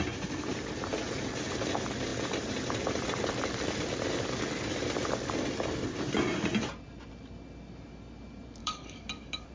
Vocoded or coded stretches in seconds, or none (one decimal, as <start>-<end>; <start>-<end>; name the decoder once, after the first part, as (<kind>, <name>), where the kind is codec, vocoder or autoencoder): 8.6-9.5 (codec, DAC)